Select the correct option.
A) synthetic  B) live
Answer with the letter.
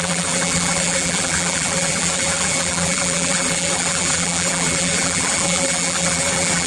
A